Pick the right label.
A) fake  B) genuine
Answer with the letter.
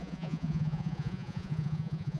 A